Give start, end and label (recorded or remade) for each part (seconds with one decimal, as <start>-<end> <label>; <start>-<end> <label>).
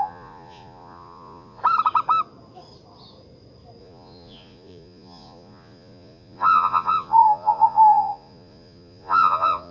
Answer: 0.0-1.6 remade; 1.6-3.8 recorded; 3.8-9.7 remade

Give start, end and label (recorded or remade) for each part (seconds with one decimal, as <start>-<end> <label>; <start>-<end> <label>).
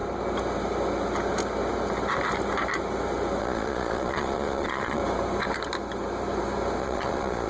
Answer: 0.0-3.4 recorded; 3.4-5.0 remade; 5.0-6.8 recorded; 6.8-7.5 remade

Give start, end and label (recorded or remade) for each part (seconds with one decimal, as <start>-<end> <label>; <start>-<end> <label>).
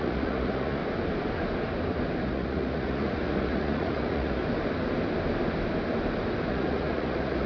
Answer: 0.0-0.8 remade; 0.8-2.2 recorded; 2.2-4.4 remade; 4.4-6.5 recorded; 6.5-7.5 remade